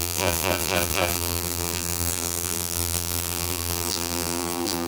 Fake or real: fake